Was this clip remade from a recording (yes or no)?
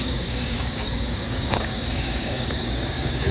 yes